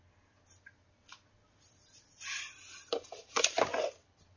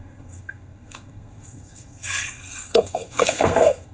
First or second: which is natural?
first